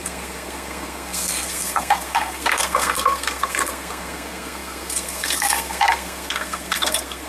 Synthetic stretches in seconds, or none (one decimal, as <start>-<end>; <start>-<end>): 0.0-7.3